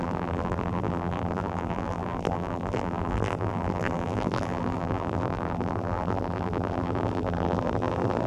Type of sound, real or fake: fake